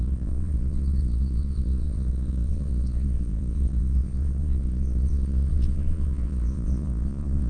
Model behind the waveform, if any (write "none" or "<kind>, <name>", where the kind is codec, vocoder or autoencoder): vocoder, Vocos